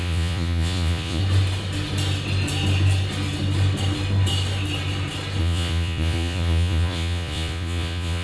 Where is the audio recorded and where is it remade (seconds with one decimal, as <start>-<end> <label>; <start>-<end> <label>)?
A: 0.0-1.2 remade; 1.2-5.4 recorded; 5.4-8.2 remade